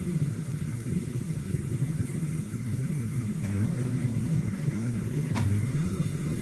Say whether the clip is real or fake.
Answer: fake